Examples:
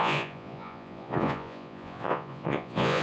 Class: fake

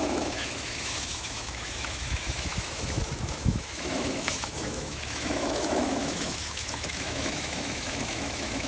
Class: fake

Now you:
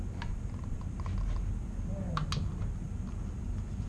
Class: real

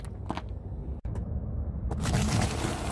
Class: real